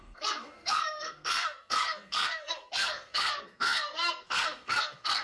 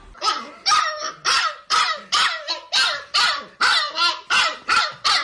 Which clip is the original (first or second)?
second